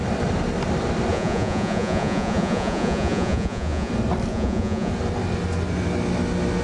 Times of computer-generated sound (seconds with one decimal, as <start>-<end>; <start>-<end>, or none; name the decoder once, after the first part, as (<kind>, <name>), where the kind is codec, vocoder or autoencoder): 1.1-3.9 (vocoder, Vocos); 4.3-4.9